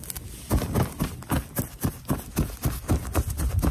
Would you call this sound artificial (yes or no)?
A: no